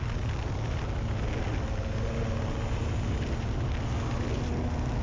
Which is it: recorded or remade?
recorded